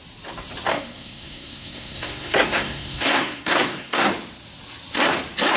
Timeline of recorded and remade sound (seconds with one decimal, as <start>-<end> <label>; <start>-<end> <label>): 0.0-0.7 recorded; 0.7-4.1 remade; 4.1-5.6 recorded